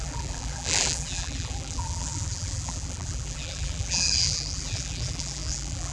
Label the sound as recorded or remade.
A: remade